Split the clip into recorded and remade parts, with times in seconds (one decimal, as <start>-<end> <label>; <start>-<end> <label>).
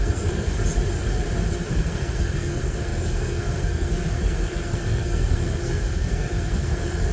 0.0-0.6 remade; 0.6-1.7 recorded; 1.7-7.1 remade